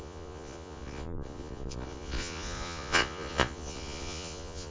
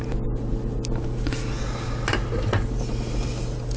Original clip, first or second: second